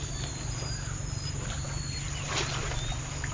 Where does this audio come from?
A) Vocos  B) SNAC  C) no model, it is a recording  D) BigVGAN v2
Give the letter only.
C